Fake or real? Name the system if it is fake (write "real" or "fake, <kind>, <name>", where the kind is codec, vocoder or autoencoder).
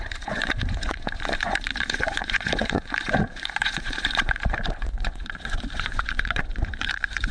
fake, vocoder, Vocos